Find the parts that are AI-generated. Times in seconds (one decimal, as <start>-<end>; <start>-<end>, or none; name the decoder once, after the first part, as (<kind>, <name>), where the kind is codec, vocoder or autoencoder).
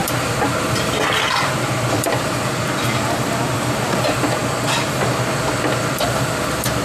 0.0-4.4 (vocoder, BigVGAN v2); 5.9-6.8